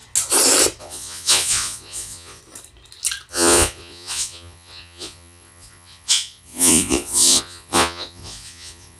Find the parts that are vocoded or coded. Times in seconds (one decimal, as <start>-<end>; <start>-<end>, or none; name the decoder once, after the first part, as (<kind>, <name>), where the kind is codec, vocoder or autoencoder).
0.8-2.4 (vocoder, Vocos); 3.3-9.0